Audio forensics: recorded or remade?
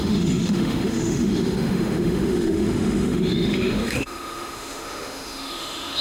remade